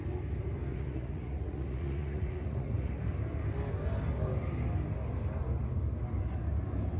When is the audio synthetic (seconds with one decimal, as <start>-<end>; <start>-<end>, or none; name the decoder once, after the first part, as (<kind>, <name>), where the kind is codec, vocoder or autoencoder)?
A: 0.7-2.9 (vocoder, Vocos)